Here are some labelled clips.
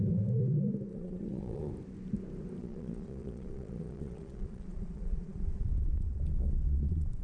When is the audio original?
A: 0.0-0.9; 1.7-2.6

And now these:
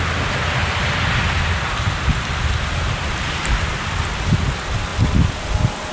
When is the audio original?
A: 0.0-5.9

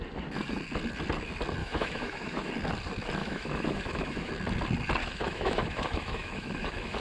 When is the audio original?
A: 0.0-1.6; 2.5-3.2; 4.3-5.0